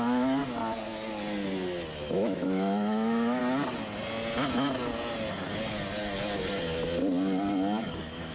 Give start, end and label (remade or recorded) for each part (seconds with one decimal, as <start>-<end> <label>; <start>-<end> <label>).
0.0-0.4 remade; 0.4-2.1 recorded; 2.1-3.4 remade; 3.4-7.9 recorded; 7.9-8.3 remade